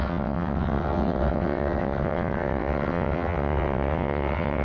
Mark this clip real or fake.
fake